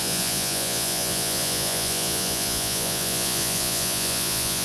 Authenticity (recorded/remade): remade